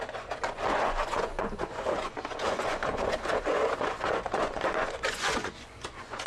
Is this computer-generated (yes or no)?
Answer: yes